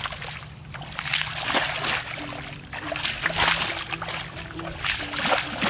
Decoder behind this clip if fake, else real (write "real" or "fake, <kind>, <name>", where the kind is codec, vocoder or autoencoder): real